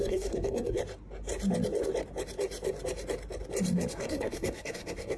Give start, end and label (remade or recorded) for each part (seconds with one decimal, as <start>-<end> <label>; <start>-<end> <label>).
0.0-0.8 remade; 0.8-3.9 recorded; 3.9-5.2 remade